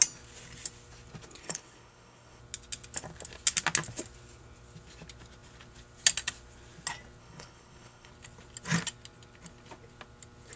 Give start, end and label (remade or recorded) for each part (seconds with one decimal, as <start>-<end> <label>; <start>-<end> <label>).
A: 0.0-1.4 recorded; 1.4-2.4 remade; 2.4-7.2 recorded; 7.2-8.1 remade; 8.1-10.6 recorded